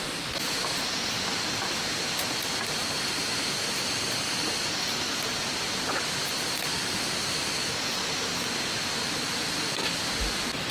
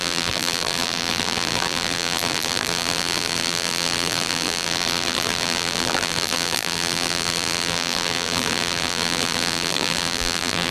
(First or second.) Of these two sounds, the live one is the first